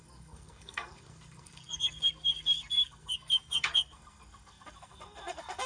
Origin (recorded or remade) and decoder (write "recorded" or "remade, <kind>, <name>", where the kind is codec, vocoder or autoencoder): remade, codec, SNAC